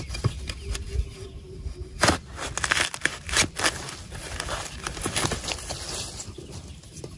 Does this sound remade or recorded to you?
recorded